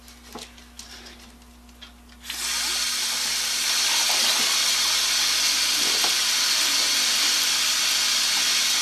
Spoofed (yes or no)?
no